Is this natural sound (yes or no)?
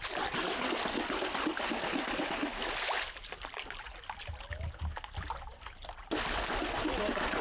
yes